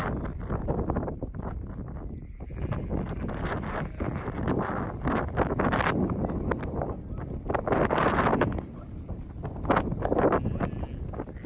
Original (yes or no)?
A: yes